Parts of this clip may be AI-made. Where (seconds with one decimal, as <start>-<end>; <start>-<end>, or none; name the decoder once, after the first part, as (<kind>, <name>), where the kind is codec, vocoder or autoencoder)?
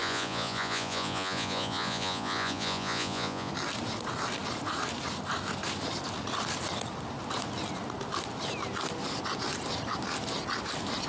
0.0-3.5 (vocoder, Vocos)